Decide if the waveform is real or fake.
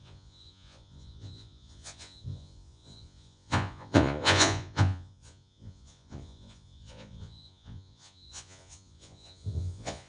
fake